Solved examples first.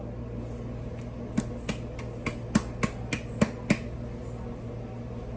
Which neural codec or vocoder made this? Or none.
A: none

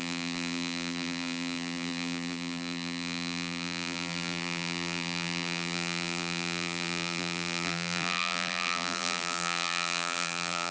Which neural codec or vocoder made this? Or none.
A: vocoder, BigVGAN v2